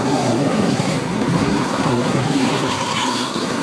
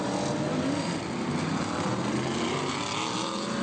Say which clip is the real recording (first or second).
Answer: second